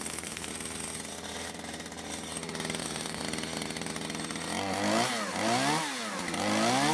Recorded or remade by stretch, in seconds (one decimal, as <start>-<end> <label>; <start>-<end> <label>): 0.0-0.5 remade; 0.5-2.8 recorded; 2.8-3.2 remade; 3.2-6.9 recorded